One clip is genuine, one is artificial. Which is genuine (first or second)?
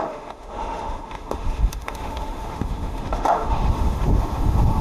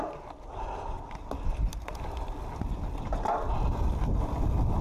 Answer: second